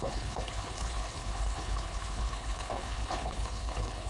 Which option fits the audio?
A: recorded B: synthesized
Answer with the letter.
B